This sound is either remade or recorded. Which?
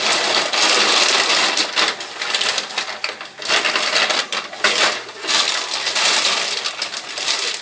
recorded